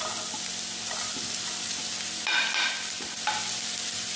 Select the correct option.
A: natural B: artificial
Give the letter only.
A